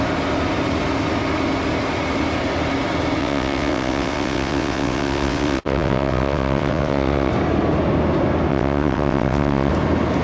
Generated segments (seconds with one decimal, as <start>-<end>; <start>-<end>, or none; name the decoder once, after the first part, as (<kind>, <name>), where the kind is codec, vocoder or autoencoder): 3.2-7.3 (vocoder, WaveNeXt); 8.5-9.7